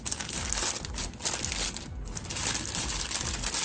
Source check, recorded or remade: recorded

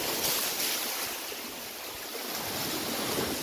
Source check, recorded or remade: recorded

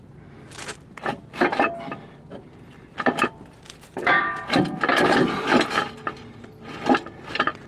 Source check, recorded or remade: remade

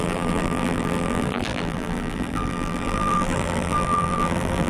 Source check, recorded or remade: remade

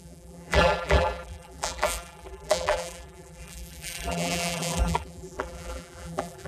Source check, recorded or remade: remade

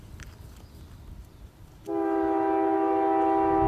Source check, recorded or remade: recorded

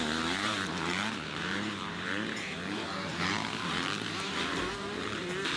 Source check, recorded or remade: remade